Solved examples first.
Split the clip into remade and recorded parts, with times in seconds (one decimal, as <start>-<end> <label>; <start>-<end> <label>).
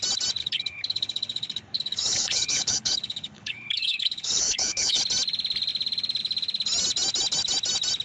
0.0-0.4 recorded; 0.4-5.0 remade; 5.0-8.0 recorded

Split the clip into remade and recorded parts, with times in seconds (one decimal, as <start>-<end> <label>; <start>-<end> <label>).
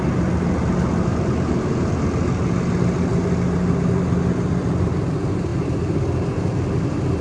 0.0-7.2 recorded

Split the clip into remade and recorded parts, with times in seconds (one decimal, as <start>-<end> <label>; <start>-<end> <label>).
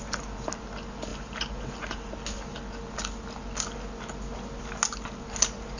0.0-5.8 recorded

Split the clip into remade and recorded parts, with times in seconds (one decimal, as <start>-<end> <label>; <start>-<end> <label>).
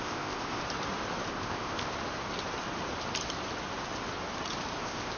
0.0-0.6 remade; 0.6-1.3 recorded; 1.3-1.9 remade; 1.9-4.8 recorded; 4.8-5.2 remade